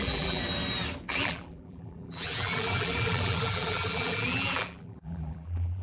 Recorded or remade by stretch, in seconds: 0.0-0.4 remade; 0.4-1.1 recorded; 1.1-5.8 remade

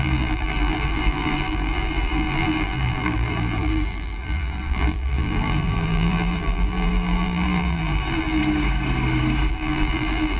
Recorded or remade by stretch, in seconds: 0.0-8.4 remade; 8.4-9.5 recorded; 9.5-10.4 remade